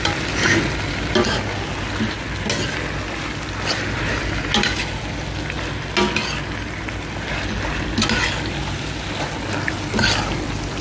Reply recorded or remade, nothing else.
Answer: recorded